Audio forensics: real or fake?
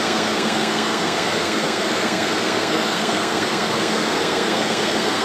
fake